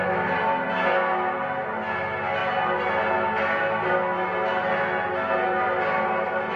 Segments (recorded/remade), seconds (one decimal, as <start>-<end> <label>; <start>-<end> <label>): 0.0-6.6 recorded